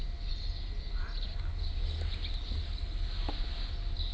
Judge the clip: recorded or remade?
recorded